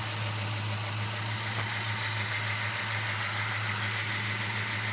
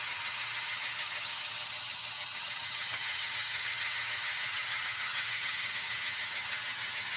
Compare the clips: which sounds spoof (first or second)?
second